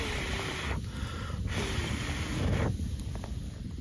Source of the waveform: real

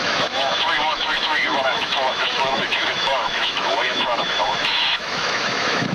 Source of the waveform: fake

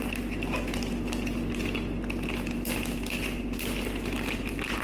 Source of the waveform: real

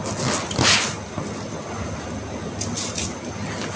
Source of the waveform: real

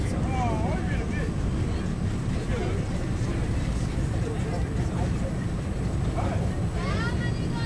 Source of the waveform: real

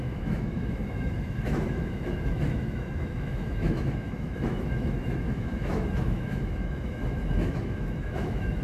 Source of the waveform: fake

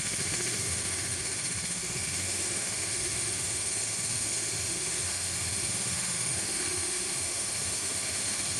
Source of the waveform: fake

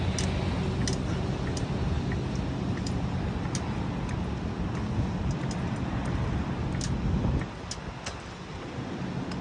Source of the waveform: real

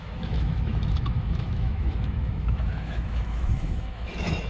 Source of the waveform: fake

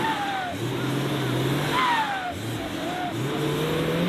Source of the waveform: real